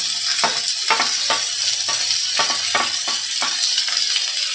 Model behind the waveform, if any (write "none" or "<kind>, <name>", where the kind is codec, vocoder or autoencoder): none